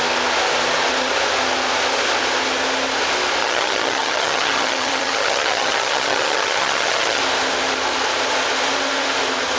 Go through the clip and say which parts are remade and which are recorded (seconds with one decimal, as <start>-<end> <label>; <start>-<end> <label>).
0.0-3.4 recorded; 3.4-7.2 remade; 7.2-9.6 recorded